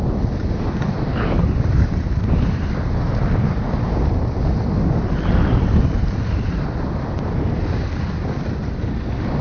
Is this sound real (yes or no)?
yes